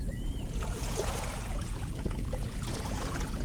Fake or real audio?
fake